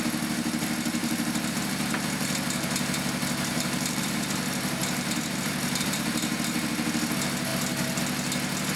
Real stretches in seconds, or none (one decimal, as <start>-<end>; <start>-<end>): 0.0-1.0; 1.7-3.5; 6.7-8.8